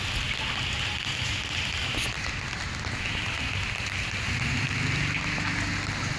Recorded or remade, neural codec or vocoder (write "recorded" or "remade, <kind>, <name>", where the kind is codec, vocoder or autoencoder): recorded